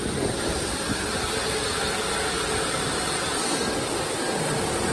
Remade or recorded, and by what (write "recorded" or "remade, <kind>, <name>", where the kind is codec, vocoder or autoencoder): recorded